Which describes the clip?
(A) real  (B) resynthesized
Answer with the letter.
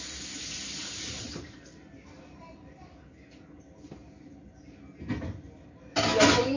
A